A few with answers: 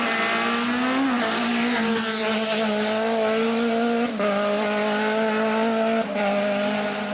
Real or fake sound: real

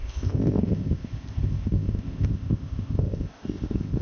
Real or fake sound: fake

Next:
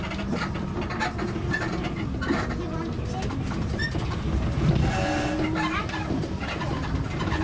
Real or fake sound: real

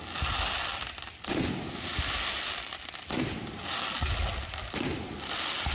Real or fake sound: real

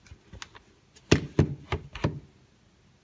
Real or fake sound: real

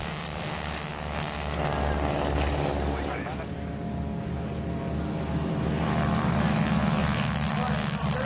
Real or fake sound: real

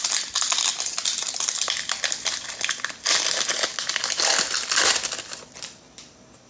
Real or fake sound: real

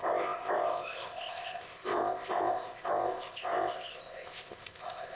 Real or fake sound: fake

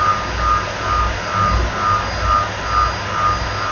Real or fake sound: real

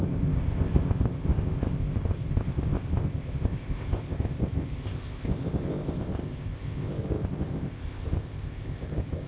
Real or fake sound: fake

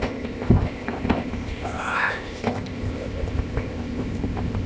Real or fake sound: fake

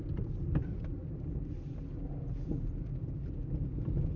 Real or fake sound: real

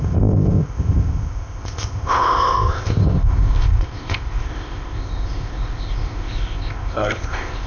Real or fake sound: fake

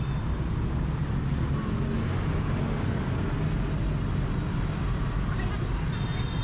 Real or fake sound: real